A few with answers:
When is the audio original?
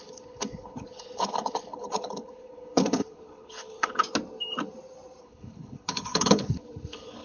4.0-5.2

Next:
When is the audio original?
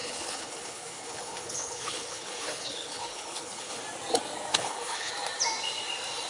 3.8-4.5; 5.1-6.3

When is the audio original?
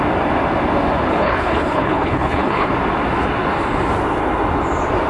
0.0-1.1; 2.7-5.1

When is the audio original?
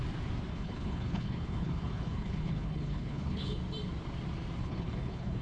0.0-0.5; 3.6-4.6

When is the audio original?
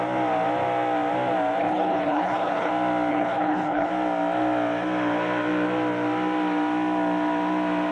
0.0-1.6; 2.7-3.1; 3.9-7.9